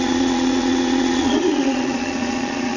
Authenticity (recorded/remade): remade